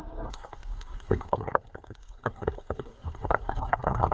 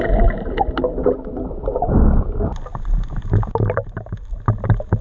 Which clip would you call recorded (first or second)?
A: second